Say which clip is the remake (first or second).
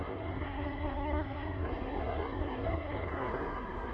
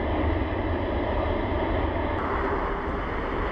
first